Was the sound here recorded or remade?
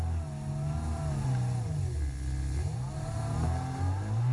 recorded